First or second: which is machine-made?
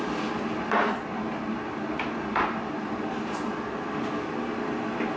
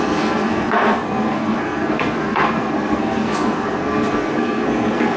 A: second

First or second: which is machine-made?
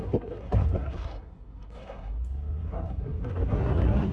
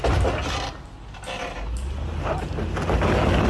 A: first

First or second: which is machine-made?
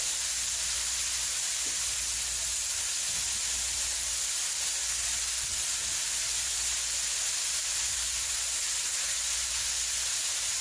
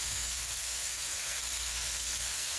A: second